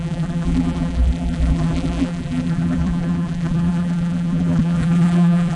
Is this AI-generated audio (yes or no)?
yes